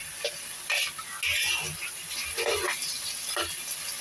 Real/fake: real